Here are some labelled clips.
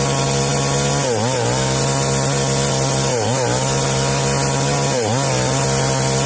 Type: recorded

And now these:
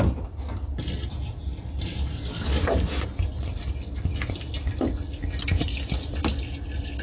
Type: recorded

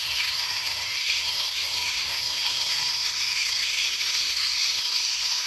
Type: remade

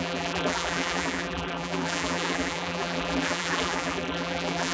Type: remade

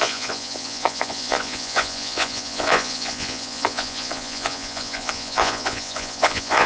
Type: remade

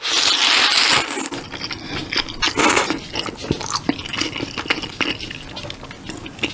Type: recorded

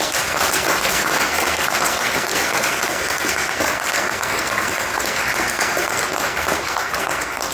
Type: remade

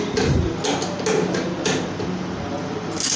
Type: recorded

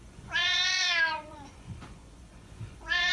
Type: remade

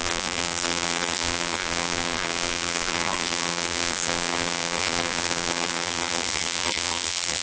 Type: remade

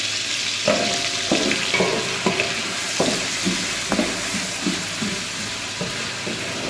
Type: recorded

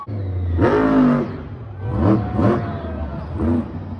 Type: recorded